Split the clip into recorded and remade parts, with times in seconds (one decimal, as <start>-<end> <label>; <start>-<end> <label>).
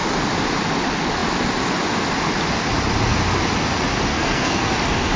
0.0-4.1 recorded; 4.1-4.7 remade; 4.7-5.2 recorded